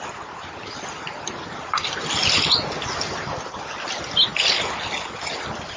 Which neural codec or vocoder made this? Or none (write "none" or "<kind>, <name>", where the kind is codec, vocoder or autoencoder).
none